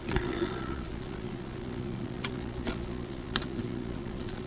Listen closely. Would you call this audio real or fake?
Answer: fake